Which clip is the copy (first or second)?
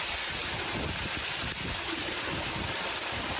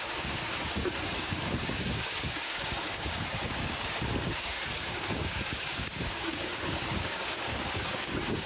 second